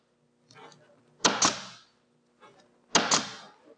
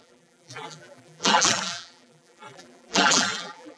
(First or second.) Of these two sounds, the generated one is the second